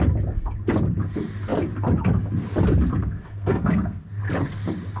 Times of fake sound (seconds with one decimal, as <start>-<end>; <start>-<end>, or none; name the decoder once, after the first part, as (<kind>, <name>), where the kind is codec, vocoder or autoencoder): 3.0-4.2 (codec, SNAC)